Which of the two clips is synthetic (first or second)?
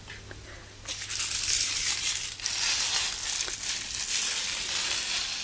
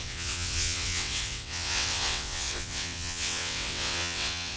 second